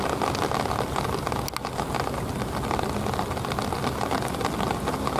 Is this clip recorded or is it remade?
recorded